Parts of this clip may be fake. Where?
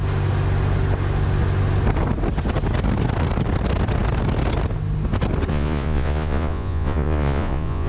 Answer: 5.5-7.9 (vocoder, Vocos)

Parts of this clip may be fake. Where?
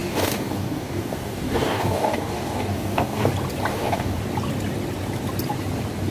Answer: 0.0-3.3 (codec, DAC); 3.7-4.2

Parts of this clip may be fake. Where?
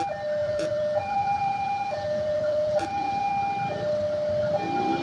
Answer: 0.4-3.3 (vocoder, Vocos)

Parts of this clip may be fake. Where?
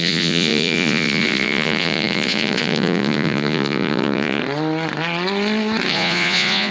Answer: 0.0-4.4 (vocoder, Vocos); 5.9-6.7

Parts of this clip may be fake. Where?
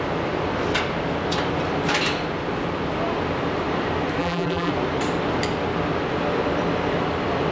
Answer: 4.2-4.7 (vocoder, BigVGAN v2)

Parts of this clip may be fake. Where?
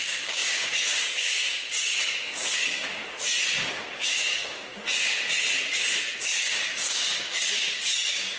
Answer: 0.0-3.0 (codec, DAC); 3.7-4.7; 6.2-8.4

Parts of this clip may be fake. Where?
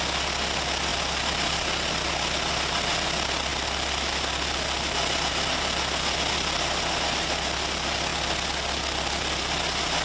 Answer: none